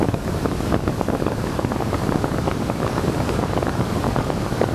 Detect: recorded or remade remade